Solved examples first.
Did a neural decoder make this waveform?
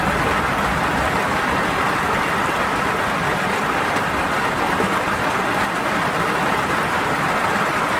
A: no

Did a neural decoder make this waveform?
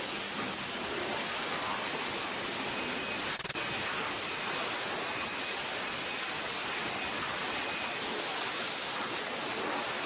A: no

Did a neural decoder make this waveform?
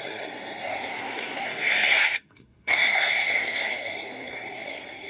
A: yes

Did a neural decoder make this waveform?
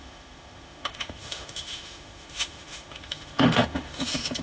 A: yes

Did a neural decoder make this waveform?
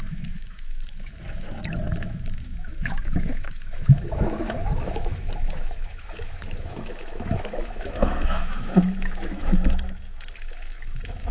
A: yes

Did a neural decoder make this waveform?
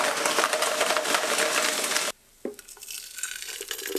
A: no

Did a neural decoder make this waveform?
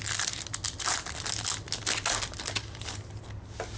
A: no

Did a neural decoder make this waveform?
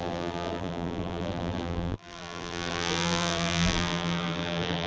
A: yes